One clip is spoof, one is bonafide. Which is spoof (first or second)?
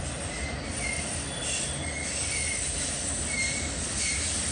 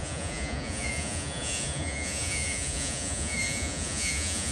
second